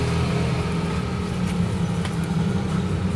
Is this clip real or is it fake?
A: real